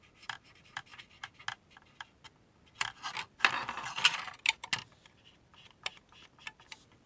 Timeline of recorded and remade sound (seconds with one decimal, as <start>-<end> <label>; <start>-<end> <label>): 0.0-7.1 recorded